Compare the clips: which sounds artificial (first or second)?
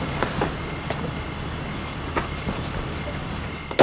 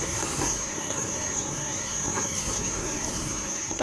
second